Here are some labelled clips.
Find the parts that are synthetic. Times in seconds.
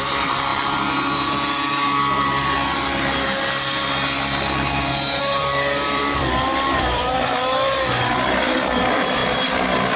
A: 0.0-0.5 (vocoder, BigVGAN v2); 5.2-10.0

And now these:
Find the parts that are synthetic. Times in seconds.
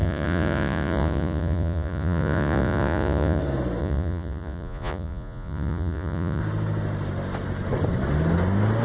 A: 0.0-3.4 (vocoder, Vocos); 3.8-6.4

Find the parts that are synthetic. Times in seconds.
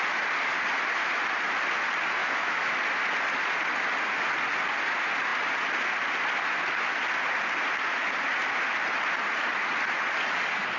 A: 2.2-2.8 (autoencoder, DAC-VAE)